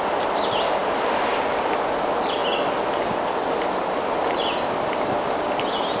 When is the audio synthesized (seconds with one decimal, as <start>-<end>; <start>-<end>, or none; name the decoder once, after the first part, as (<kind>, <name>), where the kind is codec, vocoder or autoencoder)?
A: none